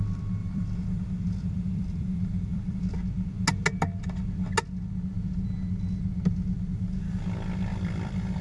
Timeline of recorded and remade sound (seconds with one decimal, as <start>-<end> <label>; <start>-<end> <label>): 0.0-0.4 recorded; 0.4-2.8 remade; 2.8-7.7 recorded; 7.7-8.4 remade